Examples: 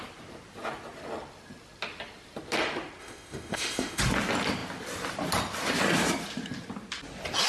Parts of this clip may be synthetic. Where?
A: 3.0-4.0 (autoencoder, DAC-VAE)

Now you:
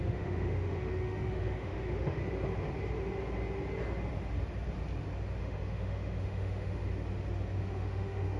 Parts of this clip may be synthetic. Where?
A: 0.0-2.2 (autoencoder, DAC-VAE); 5.4-6.9; 7.6-8.4

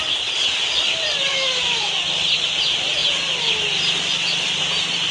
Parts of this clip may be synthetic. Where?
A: 1.3-2.0 (autoencoder, DAC-VAE)

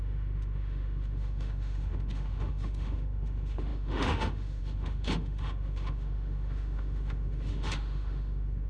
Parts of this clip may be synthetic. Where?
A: 0.0-8.7 (autoencoder, DAC-VAE)

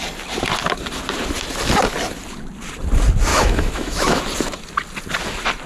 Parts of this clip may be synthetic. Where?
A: 3.3-4.2 (autoencoder, DAC-VAE)